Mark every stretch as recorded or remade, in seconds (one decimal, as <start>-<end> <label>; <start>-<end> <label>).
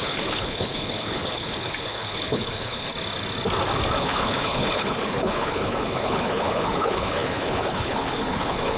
0.0-2.9 remade; 2.9-4.0 recorded; 4.0-8.8 remade